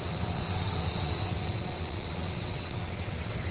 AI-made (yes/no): yes